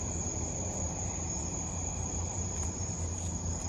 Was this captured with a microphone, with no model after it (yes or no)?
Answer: no